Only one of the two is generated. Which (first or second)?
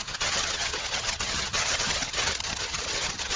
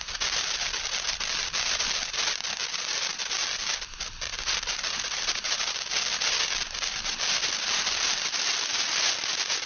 first